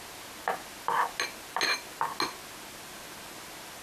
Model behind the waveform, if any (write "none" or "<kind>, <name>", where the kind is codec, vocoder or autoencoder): none